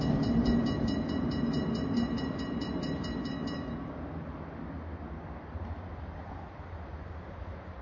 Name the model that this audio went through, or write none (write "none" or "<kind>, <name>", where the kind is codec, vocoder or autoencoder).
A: vocoder, BigVGAN v2